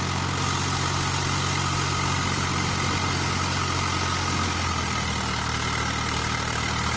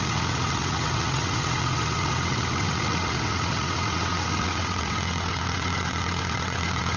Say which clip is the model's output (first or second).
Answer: second